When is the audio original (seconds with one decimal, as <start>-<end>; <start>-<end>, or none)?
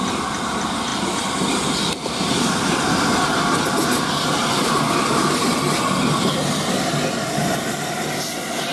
0.0-8.7